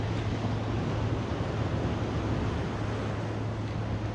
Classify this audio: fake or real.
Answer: real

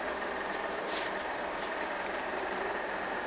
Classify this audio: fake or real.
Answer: fake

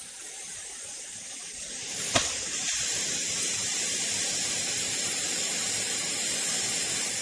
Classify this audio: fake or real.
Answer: fake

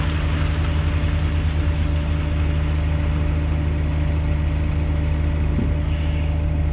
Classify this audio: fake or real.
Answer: real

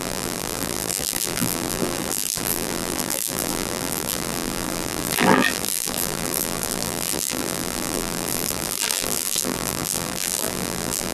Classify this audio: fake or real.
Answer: fake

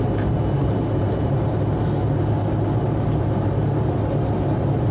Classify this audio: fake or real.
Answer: fake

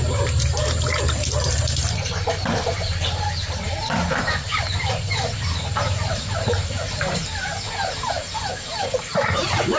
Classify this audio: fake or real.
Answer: fake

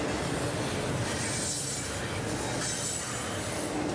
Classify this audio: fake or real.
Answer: real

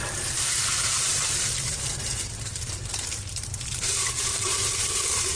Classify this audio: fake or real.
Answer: fake